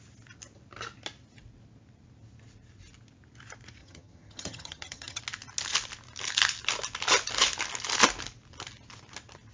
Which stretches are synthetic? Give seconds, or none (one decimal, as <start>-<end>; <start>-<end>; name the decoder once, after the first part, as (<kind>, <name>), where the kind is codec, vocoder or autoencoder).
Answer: 3.8-5.2 (vocoder, HiFi-GAN)